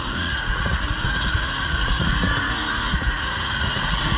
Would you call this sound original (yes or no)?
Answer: no